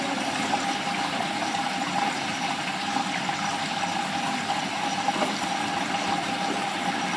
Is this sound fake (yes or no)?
yes